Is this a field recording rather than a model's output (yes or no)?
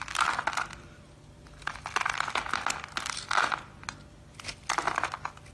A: yes